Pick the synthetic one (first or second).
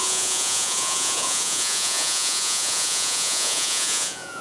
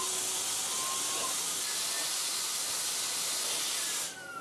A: first